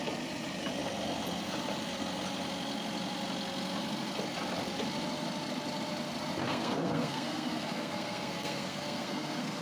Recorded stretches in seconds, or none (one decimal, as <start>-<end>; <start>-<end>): 0.0-6.4